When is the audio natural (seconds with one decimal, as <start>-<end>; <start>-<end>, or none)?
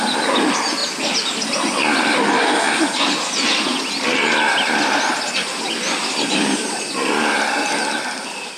0.0-8.6